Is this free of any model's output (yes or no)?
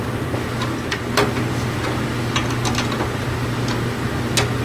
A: yes